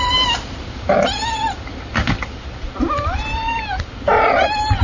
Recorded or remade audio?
recorded